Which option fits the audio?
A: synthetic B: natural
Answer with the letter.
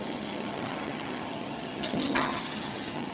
A